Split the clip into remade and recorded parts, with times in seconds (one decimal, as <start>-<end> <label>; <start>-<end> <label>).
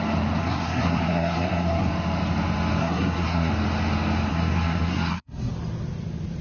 0.0-0.4 recorded; 0.4-1.9 remade; 1.9-2.8 recorded; 2.8-3.5 remade; 3.5-4.3 recorded; 4.3-5.5 remade; 5.5-6.4 recorded